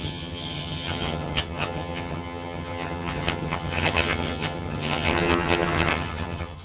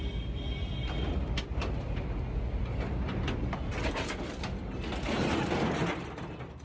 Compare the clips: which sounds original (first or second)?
second